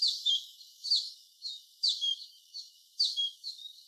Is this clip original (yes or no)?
no